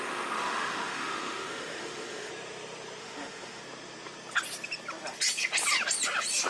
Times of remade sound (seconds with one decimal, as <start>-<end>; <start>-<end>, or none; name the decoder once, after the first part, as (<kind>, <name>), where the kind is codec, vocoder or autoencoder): 0.0-2.3 (autoencoder, DAC-VAE); 3.0-3.6